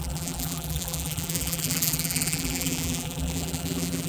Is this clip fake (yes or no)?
yes